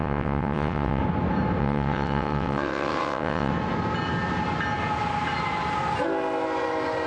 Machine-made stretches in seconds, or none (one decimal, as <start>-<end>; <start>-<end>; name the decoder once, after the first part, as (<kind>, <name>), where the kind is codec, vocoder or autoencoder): 0.0-1.0 (vocoder, WaveNeXt); 1.6-3.5